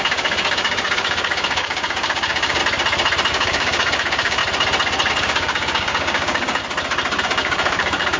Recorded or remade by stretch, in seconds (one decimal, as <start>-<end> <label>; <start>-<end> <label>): 0.0-2.6 remade; 2.6-3.3 recorded; 3.3-4.4 remade; 4.4-5.1 recorded; 5.1-6.6 remade; 6.6-7.2 recorded; 7.2-8.2 remade